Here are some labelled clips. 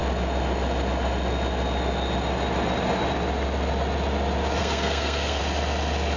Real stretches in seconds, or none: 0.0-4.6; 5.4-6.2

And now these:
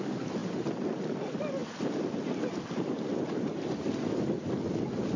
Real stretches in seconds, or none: 0.0-5.2

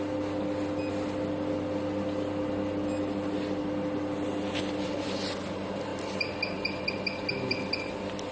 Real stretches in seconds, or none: 0.0-8.3